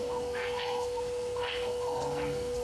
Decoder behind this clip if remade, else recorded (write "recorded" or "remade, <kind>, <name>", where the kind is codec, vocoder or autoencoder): remade, codec, SNAC